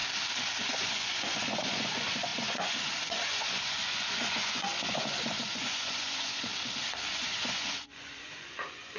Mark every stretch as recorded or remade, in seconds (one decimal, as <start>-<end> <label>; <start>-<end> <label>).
0.0-0.6 recorded; 0.6-6.5 remade; 6.5-7.1 recorded; 7.1-9.0 remade